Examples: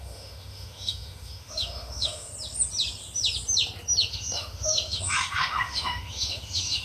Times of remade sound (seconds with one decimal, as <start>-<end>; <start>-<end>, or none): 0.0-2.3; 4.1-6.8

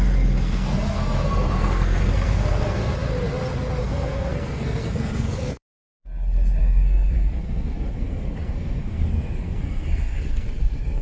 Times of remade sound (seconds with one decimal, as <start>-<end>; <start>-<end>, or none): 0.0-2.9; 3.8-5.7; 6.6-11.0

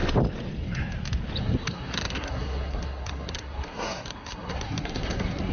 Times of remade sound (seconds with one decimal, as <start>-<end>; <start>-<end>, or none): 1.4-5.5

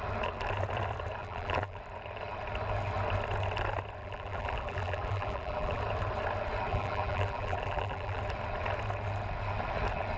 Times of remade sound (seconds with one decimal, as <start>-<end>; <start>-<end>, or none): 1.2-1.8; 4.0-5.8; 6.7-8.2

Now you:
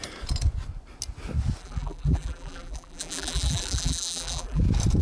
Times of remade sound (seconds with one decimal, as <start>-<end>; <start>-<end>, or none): 1.6-4.6

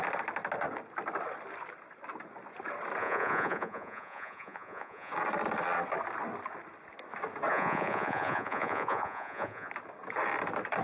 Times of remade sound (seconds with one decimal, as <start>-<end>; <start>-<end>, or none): 3.0-5.1; 7.5-9.7